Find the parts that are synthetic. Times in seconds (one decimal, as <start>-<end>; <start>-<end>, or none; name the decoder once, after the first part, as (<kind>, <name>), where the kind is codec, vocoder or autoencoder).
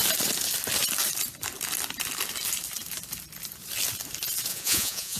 4.5-5.2 (vocoder, Vocos)